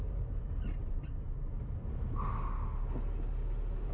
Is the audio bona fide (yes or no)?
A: yes